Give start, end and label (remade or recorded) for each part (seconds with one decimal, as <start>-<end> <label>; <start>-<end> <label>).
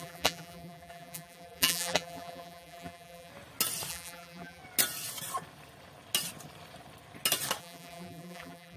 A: 0.0-3.3 remade; 3.3-3.9 recorded; 3.9-4.6 remade; 4.6-7.6 recorded; 7.6-8.8 remade